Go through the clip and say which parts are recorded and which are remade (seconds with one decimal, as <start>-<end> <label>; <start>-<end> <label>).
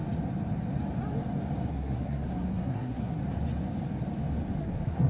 0.0-1.7 recorded; 1.7-3.2 remade; 3.2-4.6 recorded; 4.6-5.1 remade